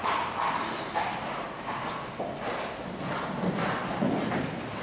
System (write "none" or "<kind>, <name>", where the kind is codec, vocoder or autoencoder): none